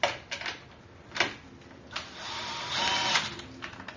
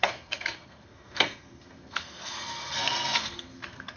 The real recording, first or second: first